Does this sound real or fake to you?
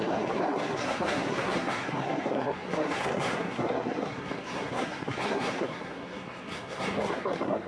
fake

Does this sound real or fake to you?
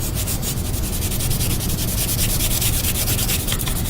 real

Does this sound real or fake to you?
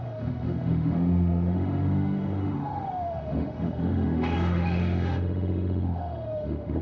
fake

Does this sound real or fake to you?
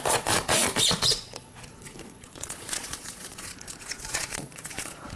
fake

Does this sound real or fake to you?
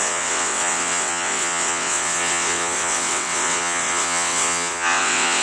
fake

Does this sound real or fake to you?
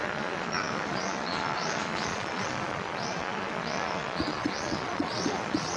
fake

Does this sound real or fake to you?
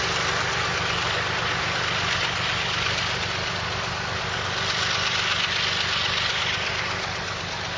real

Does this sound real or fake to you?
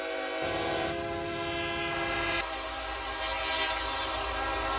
real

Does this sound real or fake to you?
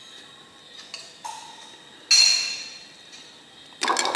real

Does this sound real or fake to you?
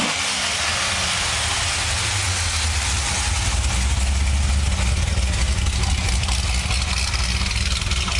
real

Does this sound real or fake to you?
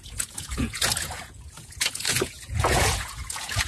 fake